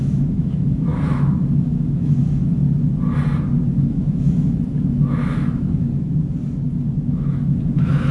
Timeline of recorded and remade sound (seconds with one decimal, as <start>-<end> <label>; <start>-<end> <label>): 0.0-2.6 remade; 2.6-3.7 recorded; 3.7-5.9 remade; 5.9-7.1 recorded; 7.1-8.1 remade